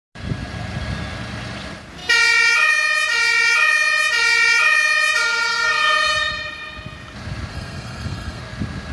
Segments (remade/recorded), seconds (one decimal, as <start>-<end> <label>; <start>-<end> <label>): 0.0-7.5 recorded; 7.5-8.4 remade; 8.4-8.9 recorded